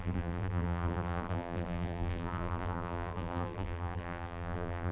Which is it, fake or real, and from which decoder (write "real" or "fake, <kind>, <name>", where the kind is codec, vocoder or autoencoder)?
fake, vocoder, BigVGAN v2